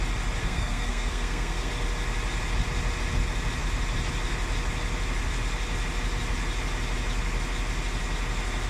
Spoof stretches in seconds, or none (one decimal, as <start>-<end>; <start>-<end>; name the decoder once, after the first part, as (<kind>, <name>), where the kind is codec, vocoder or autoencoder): 0.4-1.7 (codec, SNAC)

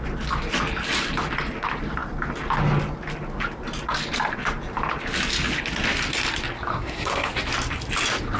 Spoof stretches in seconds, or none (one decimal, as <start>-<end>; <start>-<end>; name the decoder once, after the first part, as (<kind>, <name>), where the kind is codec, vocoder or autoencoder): 6.7-7.3 (codec, SNAC)

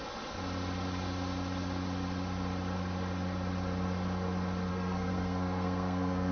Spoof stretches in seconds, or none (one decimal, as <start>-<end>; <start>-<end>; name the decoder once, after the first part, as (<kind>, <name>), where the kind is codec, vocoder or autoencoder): 4.7-6.3 (codec, SNAC)

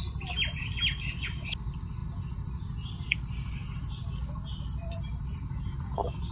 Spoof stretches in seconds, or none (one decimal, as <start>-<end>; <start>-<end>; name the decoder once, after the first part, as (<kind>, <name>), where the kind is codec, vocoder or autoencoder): none

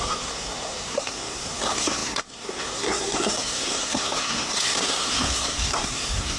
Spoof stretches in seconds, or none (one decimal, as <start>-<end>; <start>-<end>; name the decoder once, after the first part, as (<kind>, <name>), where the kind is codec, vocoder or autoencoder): 0.0-6.4 (codec, SNAC)

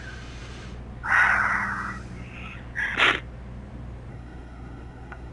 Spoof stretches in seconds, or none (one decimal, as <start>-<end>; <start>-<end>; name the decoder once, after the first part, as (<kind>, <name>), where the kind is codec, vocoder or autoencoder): 4.1-5.3 (codec, SNAC)

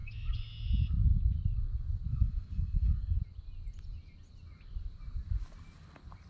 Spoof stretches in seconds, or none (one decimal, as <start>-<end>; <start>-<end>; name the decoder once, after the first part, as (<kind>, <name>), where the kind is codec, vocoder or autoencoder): 2.1-3.2 (codec, SNAC)